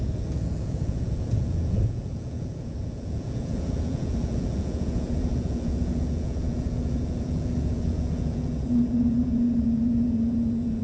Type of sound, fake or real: fake